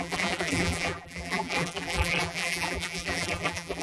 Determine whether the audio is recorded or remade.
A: remade